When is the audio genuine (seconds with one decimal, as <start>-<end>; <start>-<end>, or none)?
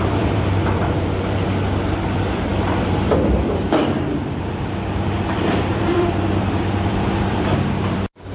none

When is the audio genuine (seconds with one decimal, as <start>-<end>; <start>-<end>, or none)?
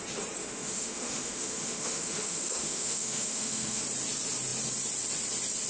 0.0-0.4; 3.8-5.7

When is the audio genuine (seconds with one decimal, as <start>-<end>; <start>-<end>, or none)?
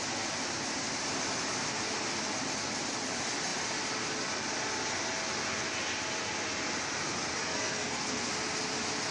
0.0-7.4; 8.3-9.1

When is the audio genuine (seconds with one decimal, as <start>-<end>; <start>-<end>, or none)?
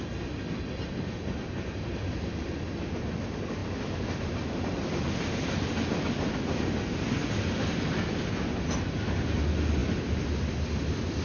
0.0-11.2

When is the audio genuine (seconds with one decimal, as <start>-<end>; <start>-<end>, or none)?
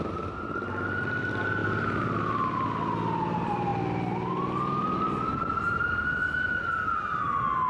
0.0-7.7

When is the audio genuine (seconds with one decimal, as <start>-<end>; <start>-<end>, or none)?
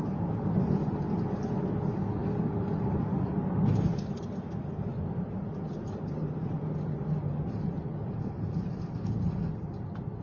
0.0-2.2; 2.8-4.9; 8.8-10.2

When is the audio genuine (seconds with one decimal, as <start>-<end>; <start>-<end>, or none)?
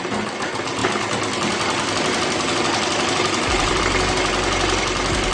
0.0-5.3